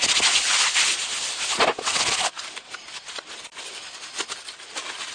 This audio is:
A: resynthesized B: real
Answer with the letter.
B